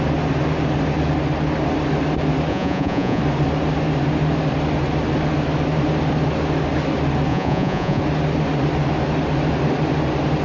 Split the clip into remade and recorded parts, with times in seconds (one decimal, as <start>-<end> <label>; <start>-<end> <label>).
0.0-2.5 recorded; 2.5-3.2 remade; 3.2-7.3 recorded; 7.3-8.0 remade; 8.0-10.4 recorded